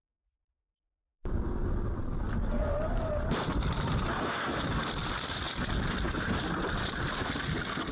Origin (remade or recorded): recorded